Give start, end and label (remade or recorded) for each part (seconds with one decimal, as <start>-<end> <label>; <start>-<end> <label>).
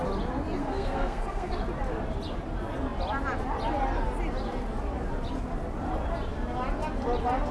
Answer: 0.0-0.6 recorded; 0.6-1.6 remade; 1.6-7.5 recorded